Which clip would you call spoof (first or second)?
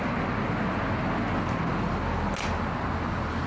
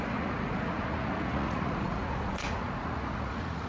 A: second